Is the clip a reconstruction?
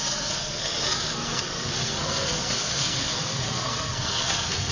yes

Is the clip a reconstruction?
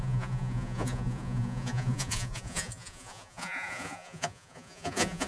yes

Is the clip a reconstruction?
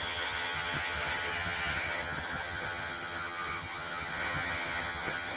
yes